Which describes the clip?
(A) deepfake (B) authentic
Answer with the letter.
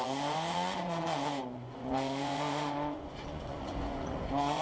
A